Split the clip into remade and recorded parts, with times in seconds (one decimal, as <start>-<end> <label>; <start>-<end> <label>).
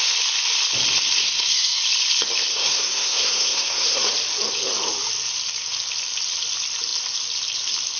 0.0-1.2 recorded; 1.2-1.8 remade; 1.8-2.5 recorded; 2.5-4.1 remade; 4.1-8.0 recorded